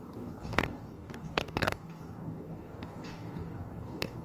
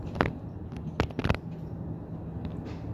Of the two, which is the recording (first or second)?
second